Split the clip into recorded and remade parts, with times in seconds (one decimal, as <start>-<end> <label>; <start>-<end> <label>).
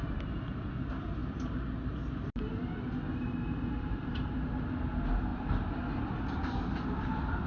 0.0-7.5 recorded